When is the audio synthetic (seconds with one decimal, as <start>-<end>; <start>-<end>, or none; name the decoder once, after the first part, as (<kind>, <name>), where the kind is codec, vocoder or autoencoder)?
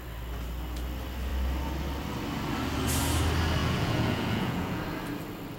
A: 3.6-4.8 (vocoder, Vocos)